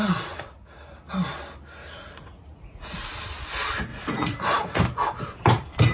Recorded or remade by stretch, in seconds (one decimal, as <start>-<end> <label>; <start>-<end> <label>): 0.0-0.8 remade; 0.8-1.8 recorded; 1.8-3.2 remade; 3.2-3.9 recorded; 3.9-4.8 remade; 4.8-5.9 recorded